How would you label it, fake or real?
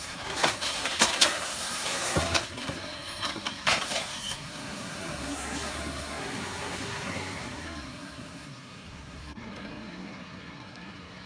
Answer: fake